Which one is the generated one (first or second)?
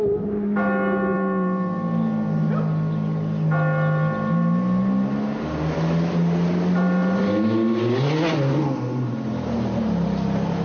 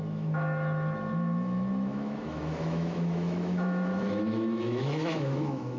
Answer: second